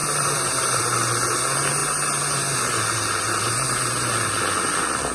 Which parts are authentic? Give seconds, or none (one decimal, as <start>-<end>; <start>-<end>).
0.8-5.1